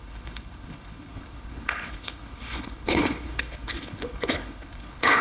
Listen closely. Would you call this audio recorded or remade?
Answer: remade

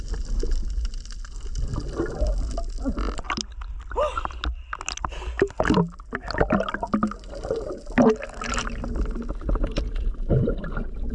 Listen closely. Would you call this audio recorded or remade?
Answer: recorded